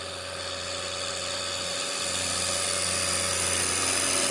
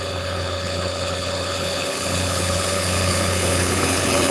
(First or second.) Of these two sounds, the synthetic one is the second